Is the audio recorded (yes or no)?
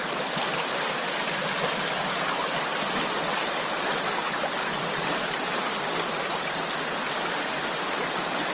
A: yes